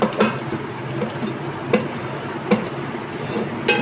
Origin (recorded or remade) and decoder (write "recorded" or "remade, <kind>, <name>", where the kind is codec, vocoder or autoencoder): recorded